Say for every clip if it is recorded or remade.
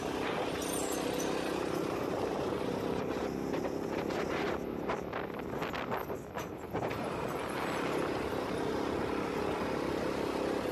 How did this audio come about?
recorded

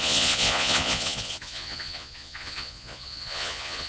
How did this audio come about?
remade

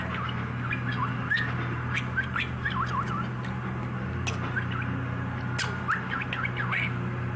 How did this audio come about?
recorded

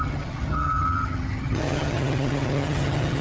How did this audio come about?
remade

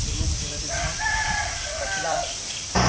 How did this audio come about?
remade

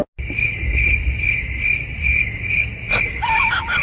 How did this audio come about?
recorded